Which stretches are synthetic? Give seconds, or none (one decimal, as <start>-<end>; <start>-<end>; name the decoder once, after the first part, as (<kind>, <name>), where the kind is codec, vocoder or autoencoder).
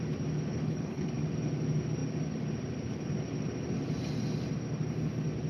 0.5-1.1 (codec, HILCodec)